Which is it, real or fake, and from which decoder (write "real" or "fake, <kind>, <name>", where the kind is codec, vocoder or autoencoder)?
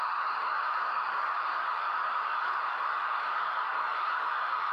fake, codec, DAC